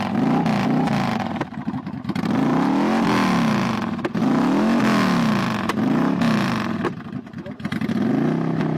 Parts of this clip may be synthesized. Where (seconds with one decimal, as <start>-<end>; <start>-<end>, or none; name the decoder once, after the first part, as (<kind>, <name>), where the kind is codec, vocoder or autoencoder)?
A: none